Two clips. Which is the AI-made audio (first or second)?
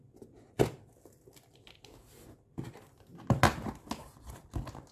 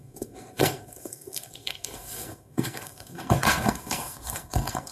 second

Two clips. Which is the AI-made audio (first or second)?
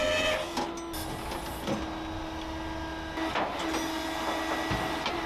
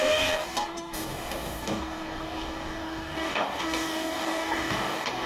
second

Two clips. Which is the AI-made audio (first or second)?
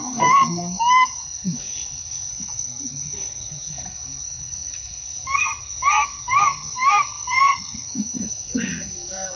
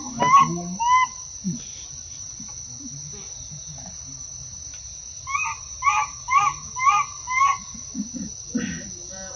first